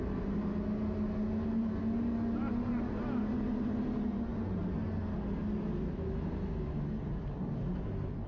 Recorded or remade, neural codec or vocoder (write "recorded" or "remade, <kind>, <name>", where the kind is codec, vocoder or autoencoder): recorded